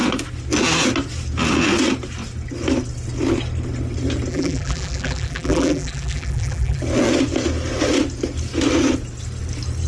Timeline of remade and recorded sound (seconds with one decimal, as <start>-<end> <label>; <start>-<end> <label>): 0.0-4.3 recorded; 4.3-6.8 remade; 6.8-9.9 recorded